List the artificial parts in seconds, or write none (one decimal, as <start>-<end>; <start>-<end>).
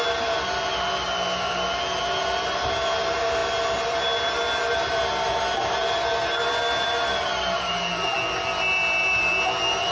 none